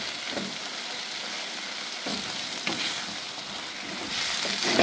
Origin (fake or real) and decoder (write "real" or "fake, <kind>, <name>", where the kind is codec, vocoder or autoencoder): real